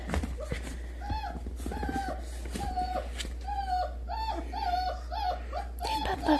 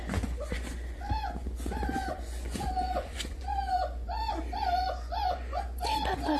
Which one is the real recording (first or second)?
first